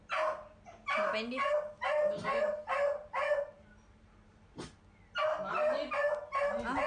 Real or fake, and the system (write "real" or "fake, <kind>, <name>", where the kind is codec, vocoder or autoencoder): real